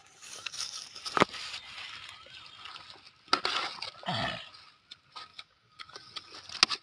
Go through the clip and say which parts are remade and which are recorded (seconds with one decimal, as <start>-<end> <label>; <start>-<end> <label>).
0.0-1.0 remade; 1.0-5.3 recorded; 5.3-6.1 remade; 6.1-6.8 recorded